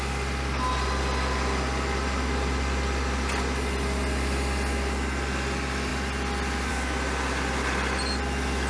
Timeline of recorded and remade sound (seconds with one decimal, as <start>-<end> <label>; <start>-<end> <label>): 0.0-8.7 recorded